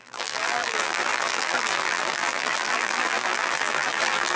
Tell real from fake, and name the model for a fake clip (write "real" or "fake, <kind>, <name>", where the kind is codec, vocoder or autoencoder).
fake, vocoder, BigVGAN v2